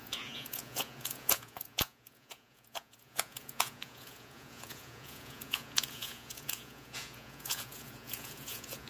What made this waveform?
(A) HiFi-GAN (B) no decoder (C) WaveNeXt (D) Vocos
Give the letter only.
D